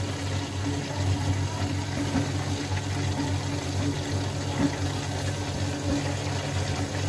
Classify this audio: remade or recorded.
recorded